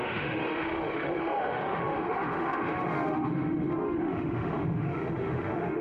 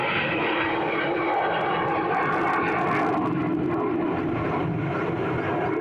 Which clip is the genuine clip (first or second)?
second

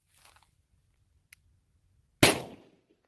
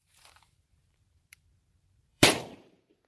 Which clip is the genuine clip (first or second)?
first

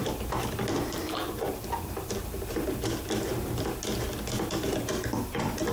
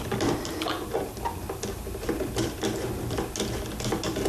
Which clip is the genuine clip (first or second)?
second